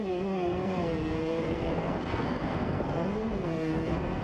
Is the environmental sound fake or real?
fake